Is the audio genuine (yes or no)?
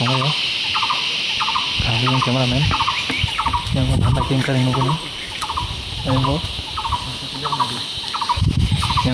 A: no